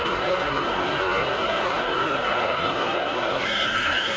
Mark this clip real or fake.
fake